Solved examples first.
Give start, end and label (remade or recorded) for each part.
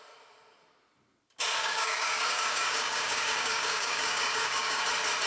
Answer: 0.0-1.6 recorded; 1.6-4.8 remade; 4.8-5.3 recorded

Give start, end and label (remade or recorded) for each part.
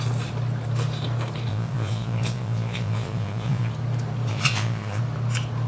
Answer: 0.0-1.5 recorded; 1.5-3.7 remade; 3.7-4.3 recorded; 4.3-5.0 remade; 5.0-5.7 recorded